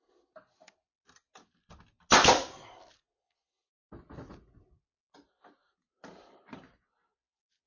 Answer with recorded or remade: recorded